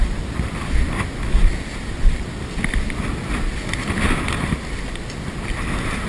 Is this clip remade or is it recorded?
recorded